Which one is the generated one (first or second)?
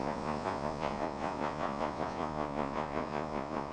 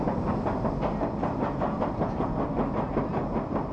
first